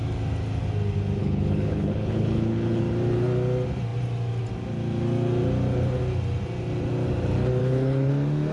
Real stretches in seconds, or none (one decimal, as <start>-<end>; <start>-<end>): 0.0-1.2; 2.8-7.6; 8.1-8.5